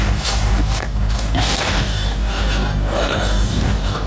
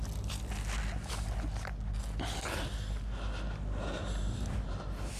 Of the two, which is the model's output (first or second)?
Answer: first